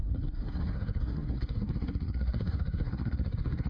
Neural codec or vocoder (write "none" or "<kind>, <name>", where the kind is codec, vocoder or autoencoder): codec, SNAC